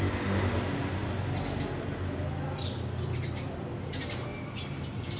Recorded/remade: recorded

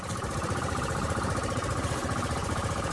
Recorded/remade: remade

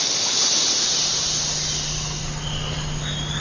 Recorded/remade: recorded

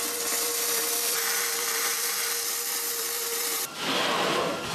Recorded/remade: remade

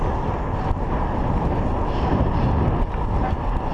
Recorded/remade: recorded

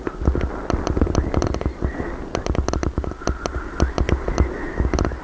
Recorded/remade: remade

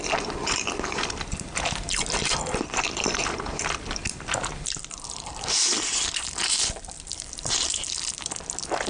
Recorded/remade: remade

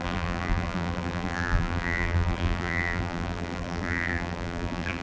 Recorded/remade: remade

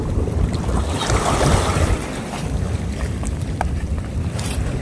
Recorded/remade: remade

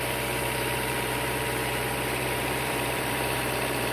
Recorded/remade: remade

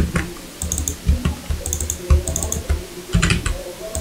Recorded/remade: recorded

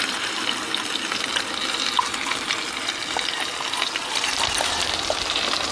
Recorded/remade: recorded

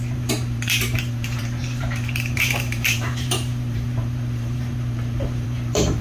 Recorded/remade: remade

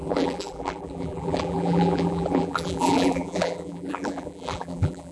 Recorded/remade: remade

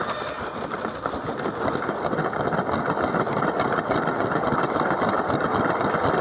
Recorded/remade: recorded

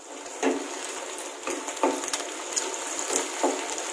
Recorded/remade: recorded